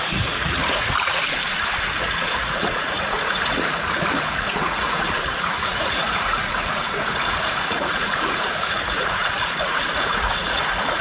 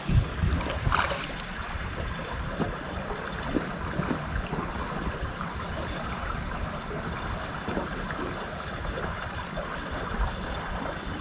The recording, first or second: second